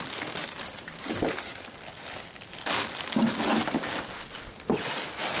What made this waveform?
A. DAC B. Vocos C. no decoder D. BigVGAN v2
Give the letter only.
C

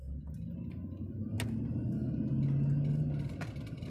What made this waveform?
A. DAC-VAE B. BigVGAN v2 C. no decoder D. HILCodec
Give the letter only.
C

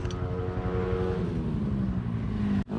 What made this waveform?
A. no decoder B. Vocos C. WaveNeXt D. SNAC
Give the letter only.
A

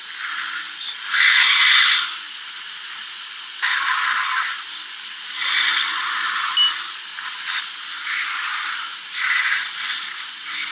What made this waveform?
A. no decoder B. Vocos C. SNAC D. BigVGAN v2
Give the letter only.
A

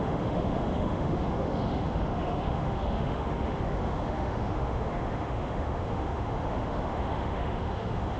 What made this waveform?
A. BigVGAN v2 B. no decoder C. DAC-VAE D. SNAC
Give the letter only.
C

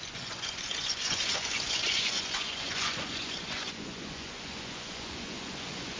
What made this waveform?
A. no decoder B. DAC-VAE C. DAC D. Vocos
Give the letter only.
D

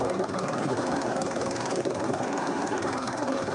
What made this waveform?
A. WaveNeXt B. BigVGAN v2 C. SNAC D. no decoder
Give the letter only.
C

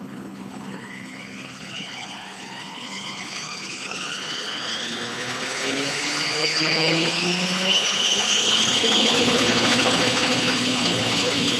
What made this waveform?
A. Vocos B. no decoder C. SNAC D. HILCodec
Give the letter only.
D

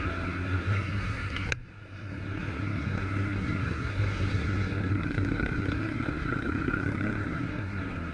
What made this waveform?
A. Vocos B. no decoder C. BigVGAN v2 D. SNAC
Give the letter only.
D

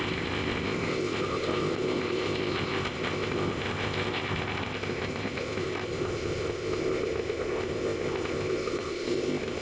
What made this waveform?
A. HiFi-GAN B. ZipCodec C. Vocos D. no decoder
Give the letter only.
B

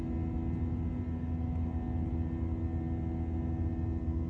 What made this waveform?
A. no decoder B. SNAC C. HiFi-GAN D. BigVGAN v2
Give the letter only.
A